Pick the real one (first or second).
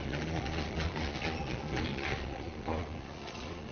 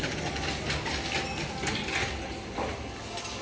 second